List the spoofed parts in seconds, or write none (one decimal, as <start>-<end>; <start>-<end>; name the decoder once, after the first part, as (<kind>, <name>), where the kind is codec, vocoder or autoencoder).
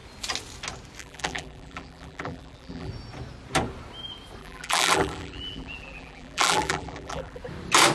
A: 1.0-2.9 (vocoder, BigVGAN v2); 4.4-7.4